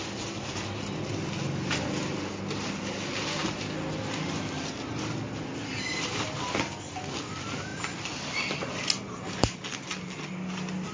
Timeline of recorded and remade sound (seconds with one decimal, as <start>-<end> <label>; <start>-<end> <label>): 0.0-10.9 recorded